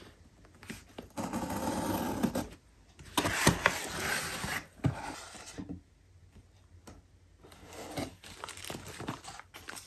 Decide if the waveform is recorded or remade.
recorded